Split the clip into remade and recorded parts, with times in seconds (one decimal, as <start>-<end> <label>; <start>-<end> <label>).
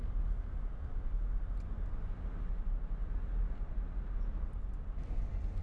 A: 0.0-5.6 recorded